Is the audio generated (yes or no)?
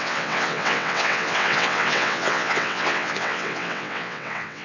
yes